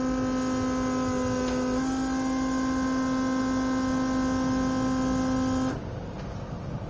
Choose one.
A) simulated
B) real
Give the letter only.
B